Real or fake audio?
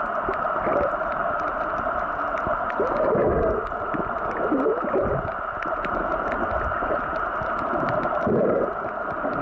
real